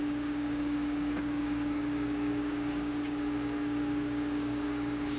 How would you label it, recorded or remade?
remade